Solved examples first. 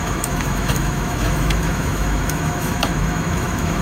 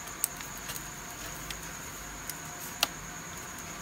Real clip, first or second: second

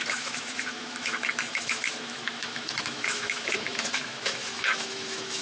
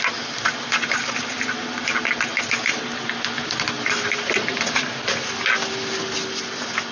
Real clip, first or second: second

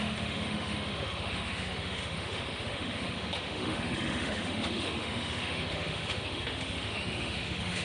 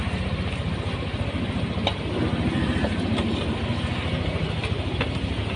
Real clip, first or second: second